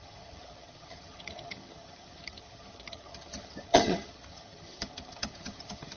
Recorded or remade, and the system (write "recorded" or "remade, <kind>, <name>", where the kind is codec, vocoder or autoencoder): remade, vocoder, HiFi-GAN